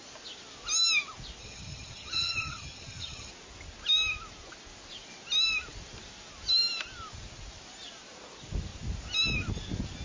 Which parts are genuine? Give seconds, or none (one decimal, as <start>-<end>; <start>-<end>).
0.0-1.4; 3.3-10.0